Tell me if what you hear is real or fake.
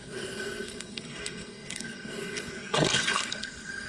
fake